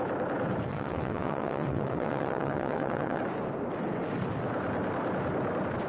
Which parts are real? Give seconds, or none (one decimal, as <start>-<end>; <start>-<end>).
0.0-0.7; 3.2-5.9